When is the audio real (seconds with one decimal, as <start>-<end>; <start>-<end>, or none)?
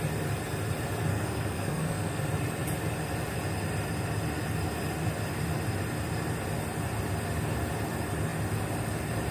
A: 0.0-1.1; 2.2-9.3